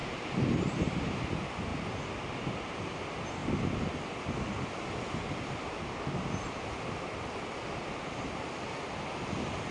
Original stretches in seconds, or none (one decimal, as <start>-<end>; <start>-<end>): 1.2-1.7; 3.0-9.7